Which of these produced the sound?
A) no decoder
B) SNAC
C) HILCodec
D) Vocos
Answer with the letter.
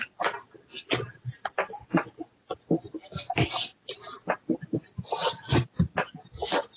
A